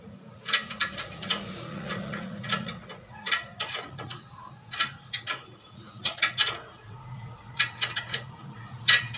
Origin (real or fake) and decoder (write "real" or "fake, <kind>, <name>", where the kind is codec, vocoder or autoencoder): fake, vocoder, Vocos